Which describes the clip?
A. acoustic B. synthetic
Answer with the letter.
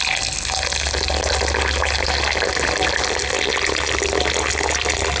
A